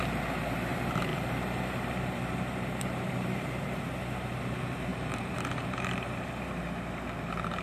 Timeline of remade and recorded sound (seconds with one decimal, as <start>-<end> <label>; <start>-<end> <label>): 0.0-1.1 recorded; 1.1-3.6 remade; 3.6-4.9 recorded; 4.9-6.3 remade; 6.3-7.6 recorded